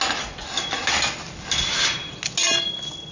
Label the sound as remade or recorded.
recorded